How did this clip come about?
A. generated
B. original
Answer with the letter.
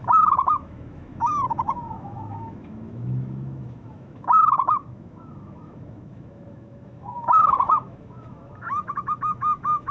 A